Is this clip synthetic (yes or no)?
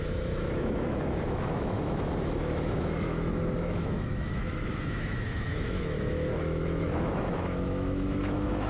yes